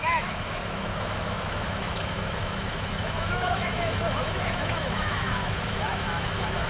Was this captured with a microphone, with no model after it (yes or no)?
no